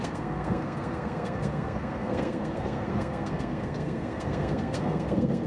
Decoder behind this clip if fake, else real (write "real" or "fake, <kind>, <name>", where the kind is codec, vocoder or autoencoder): fake, codec, SNAC